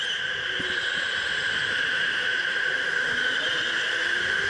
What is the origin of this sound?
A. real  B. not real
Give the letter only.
B